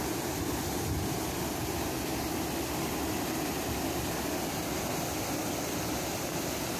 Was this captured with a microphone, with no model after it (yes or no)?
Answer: yes